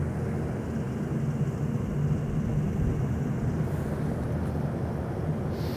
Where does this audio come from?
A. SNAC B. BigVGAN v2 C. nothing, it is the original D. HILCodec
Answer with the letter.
C